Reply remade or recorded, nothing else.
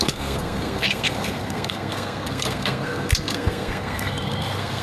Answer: remade